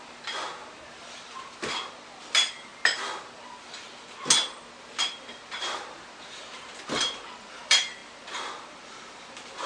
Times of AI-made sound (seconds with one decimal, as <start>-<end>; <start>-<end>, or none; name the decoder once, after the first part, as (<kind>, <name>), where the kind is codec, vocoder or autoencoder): 1.0-2.7 (vocoder, BigVGAN v2); 4.8-9.7